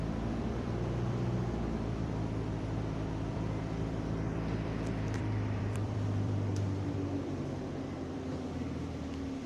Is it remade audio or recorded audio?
remade